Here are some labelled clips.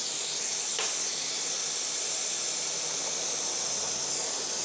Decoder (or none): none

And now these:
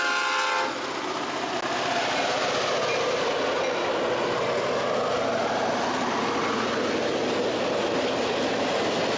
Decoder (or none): none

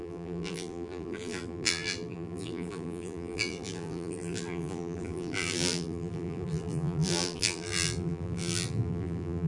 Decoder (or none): vocoder, BigVGAN v2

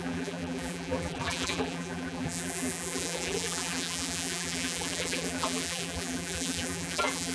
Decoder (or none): vocoder, BigVGAN v2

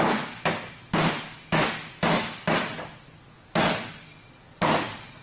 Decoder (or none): none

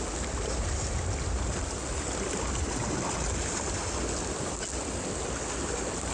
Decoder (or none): none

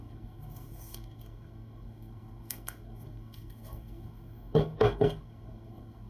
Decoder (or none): codec, SNAC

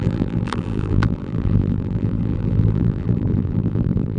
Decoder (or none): vocoder, BigVGAN v2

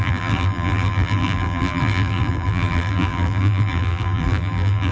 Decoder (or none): vocoder, BigVGAN v2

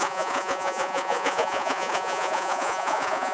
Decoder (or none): vocoder, Vocos